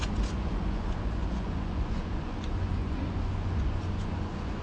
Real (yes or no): no